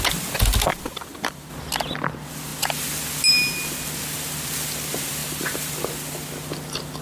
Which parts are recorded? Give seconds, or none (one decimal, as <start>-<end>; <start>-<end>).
0.0-0.7; 1.5-5.2; 5.7-7.0